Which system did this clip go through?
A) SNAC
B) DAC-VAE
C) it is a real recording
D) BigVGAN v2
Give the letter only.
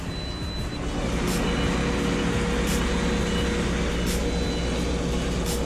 C